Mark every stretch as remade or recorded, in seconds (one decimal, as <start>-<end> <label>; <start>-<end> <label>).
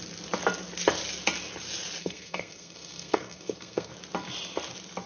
0.0-2.0 recorded; 2.0-3.9 remade; 3.9-5.1 recorded